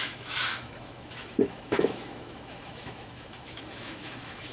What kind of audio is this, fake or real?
fake